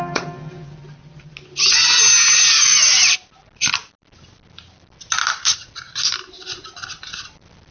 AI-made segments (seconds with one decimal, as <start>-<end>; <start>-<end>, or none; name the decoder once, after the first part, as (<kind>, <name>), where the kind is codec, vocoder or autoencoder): 2.3-3.3 (vocoder, BigVGAN v2)